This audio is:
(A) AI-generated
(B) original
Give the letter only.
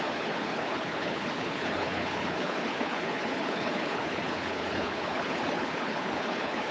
A